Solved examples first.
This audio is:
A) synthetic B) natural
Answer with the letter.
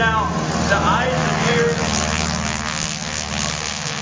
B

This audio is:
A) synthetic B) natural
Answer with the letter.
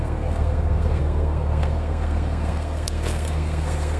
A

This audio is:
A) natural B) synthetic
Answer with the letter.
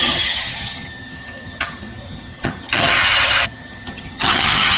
B